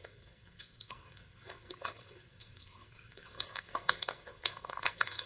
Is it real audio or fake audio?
fake